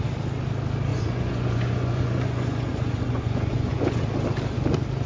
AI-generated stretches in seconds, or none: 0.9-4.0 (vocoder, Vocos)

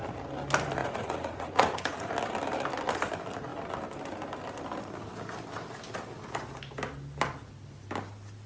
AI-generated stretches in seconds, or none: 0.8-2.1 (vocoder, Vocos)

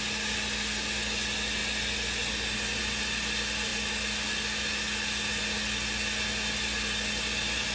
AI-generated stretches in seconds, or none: none